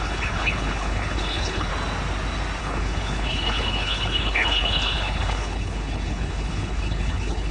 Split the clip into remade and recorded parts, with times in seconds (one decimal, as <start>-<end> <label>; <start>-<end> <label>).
0.0-1.7 remade; 1.7-2.6 recorded; 2.6-7.5 remade

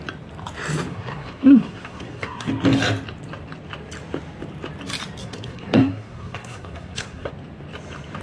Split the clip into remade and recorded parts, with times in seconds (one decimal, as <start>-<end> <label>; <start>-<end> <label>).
0.0-0.9 recorded; 0.9-2.5 remade; 2.5-5.2 recorded; 5.2-7.3 remade; 7.3-8.2 recorded

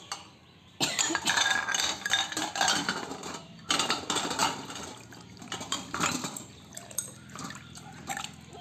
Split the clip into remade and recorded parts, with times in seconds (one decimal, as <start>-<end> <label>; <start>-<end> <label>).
0.0-8.6 recorded

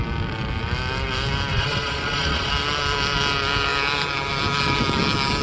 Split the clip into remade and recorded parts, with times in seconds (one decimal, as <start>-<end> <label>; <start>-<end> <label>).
0.0-1.5 recorded; 1.5-2.5 remade; 2.5-5.4 recorded

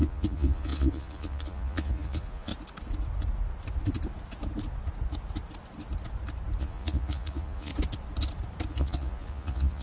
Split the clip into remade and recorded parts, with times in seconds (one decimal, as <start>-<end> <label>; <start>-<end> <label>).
0.0-2.5 remade; 2.5-6.6 recorded; 6.6-7.7 remade; 7.7-8.7 recorded; 8.7-9.8 remade